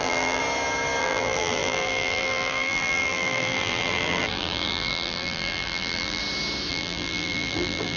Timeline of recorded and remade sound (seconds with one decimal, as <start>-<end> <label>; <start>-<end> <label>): 0.0-0.4 remade; 0.4-1.0 recorded; 1.0-6.2 remade; 6.2-6.7 recorded; 6.7-8.0 remade